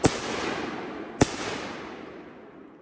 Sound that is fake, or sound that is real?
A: real